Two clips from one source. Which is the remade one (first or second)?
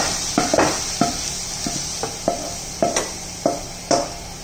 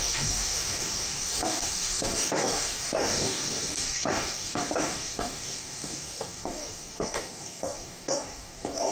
second